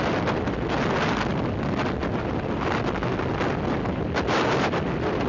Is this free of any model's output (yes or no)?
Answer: yes